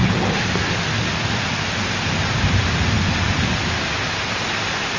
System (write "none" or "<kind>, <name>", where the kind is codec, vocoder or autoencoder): none